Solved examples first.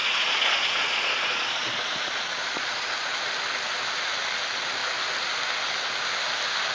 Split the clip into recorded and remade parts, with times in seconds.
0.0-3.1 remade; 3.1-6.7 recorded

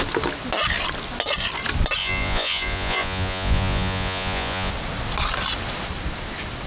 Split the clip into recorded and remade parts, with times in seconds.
0.0-2.0 recorded; 2.0-4.7 remade; 4.7-6.7 recorded

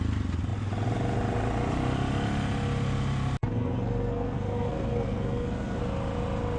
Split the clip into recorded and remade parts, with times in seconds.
0.0-3.4 recorded; 3.4-5.8 remade; 5.8-6.6 recorded

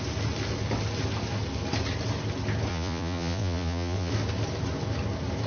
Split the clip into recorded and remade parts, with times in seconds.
0.0-2.7 recorded; 2.7-4.1 remade; 4.1-5.5 recorded

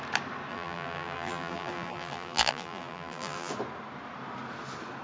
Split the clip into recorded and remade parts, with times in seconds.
0.0-0.5 recorded; 0.5-3.5 remade; 3.5-5.0 recorded